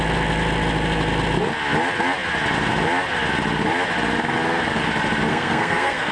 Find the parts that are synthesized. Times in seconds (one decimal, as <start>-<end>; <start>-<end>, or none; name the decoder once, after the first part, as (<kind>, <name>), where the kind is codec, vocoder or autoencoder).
5.3-6.1 (codec, SNAC)